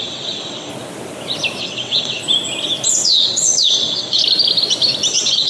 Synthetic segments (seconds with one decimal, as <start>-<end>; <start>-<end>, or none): 0.0-0.7; 1.6-2.2; 2.9-4.2; 5.1-5.5